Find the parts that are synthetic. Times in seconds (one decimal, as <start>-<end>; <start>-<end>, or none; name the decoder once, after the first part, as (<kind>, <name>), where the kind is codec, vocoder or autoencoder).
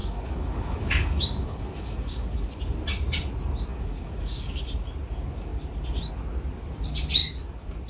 0.0-2.5 (codec, DAC); 3.7-4.6